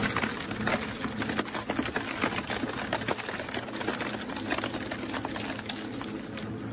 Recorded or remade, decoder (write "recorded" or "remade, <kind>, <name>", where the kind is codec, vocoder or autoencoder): recorded